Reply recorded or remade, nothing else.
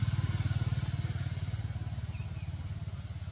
recorded